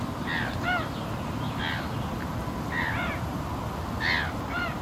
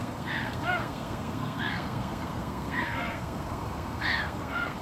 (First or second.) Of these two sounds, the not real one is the second